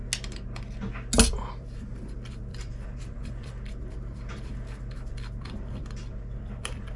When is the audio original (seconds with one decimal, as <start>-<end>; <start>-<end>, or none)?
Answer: 0.0-1.5